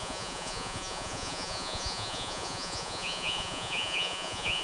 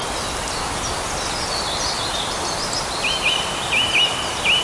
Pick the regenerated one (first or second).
first